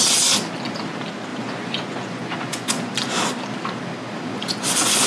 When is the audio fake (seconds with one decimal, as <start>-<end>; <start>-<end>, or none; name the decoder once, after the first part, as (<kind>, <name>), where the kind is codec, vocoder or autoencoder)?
1.3-2.9 (vocoder, Vocos); 4.3-5.1